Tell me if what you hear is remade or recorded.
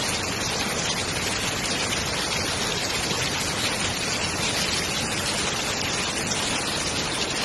recorded